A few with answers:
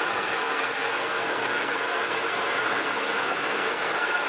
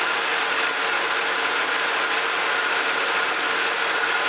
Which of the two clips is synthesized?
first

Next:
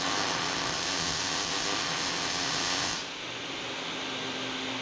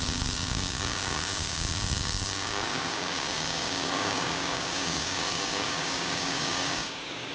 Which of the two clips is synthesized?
second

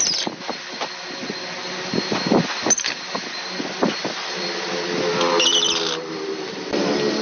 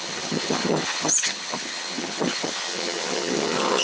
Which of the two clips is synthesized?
second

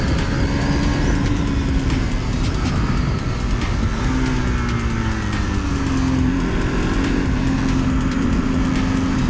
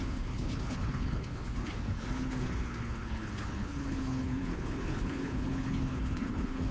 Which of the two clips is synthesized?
second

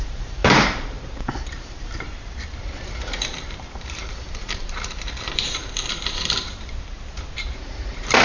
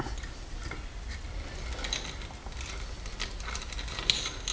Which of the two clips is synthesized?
first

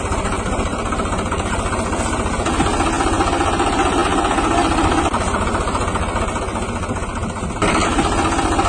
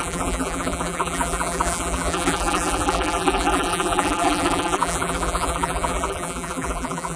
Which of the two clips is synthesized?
second